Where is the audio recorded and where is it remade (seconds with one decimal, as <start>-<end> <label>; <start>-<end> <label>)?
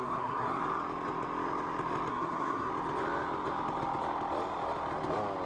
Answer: 0.0-0.6 remade; 0.6-2.1 recorded; 2.1-2.7 remade; 2.7-5.5 recorded